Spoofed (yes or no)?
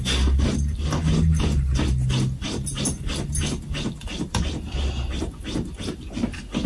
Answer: no